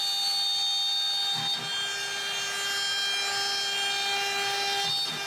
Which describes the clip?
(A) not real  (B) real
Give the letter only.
B